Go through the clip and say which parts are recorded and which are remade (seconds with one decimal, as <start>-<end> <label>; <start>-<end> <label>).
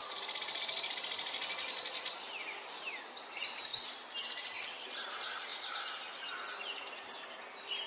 0.0-1.0 remade; 1.0-3.7 recorded; 3.7-4.7 remade; 4.7-5.5 recorded; 5.5-6.3 remade; 6.3-7.9 recorded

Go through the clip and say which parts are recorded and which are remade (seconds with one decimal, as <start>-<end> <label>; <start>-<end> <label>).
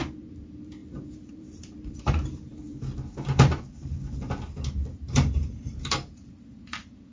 0.0-2.5 remade; 2.5-5.1 recorded; 5.1-7.1 remade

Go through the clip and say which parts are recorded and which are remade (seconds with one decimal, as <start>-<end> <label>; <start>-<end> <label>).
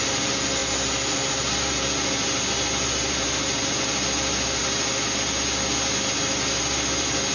0.0-7.3 recorded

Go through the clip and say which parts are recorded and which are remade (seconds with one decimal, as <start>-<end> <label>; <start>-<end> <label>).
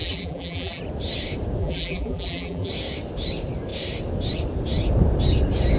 0.0-0.8 remade; 0.8-1.6 recorded; 1.6-2.7 remade; 2.7-5.8 recorded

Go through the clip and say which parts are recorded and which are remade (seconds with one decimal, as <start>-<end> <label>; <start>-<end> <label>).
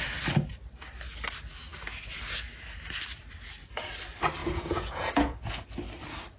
0.0-4.4 recorded; 4.4-5.6 remade; 5.6-6.4 recorded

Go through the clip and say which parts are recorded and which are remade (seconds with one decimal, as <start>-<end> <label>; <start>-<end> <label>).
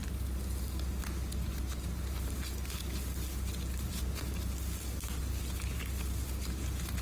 0.0-7.0 recorded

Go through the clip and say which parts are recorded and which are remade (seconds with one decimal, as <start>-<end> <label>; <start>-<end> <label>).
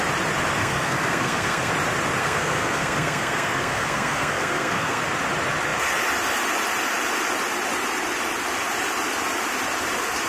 0.0-0.6 recorded; 0.6-1.7 remade; 1.7-2.2 recorded; 2.2-5.0 remade; 5.0-10.3 recorded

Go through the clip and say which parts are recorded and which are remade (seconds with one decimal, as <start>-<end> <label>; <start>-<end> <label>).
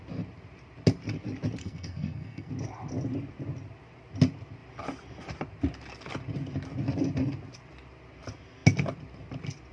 0.0-1.6 recorded; 1.6-2.5 remade; 2.5-9.7 recorded